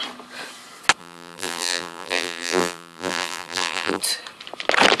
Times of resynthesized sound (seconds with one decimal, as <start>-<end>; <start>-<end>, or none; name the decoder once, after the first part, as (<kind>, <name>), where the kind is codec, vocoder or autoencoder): 1.0-4.0 (vocoder, BigVGAN v2)